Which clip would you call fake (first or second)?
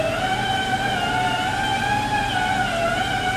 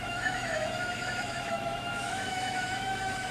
second